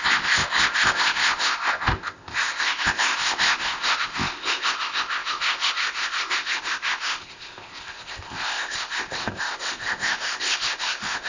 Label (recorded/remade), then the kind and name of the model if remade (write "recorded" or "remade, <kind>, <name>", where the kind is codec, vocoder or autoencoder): remade, codec, ZipCodec